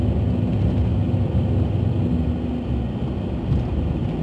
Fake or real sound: real